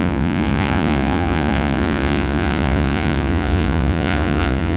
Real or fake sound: fake